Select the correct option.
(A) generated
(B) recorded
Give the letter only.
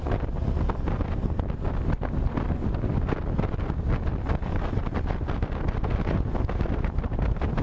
B